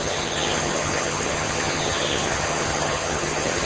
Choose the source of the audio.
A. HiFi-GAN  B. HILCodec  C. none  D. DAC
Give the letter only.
A